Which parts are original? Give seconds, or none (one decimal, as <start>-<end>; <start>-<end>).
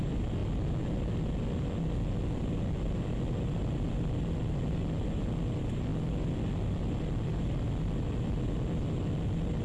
0.0-9.6